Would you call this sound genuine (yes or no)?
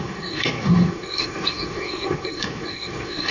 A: no